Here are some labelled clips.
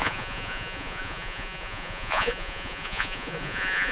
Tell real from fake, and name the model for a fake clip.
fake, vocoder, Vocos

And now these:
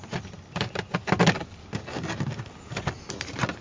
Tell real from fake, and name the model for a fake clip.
real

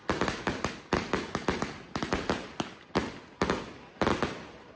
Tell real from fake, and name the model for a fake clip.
real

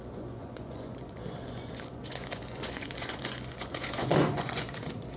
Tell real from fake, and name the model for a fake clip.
fake, vocoder, Vocos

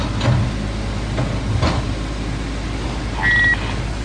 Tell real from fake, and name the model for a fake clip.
real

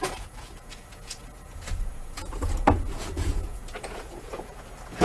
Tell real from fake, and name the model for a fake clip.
fake, vocoder, Vocos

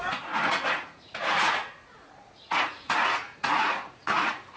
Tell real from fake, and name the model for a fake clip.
fake, vocoder, Vocos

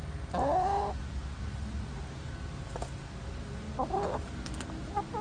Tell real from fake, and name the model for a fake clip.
real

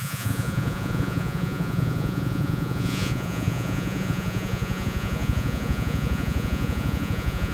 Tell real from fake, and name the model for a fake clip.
fake, vocoder, Vocos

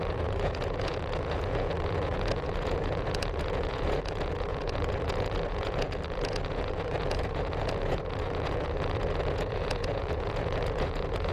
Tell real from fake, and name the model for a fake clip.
fake, vocoder, Vocos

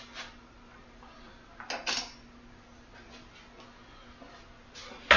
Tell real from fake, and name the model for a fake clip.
real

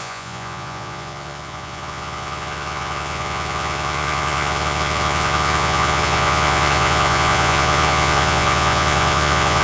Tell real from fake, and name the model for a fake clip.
fake, vocoder, Vocos